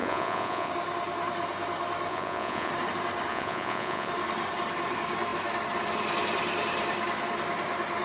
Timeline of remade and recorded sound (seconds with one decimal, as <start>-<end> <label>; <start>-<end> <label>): 0.0-0.7 remade; 0.7-2.1 recorded; 2.1-2.7 remade; 2.7-3.3 recorded; 3.3-4.1 remade; 4.1-8.0 recorded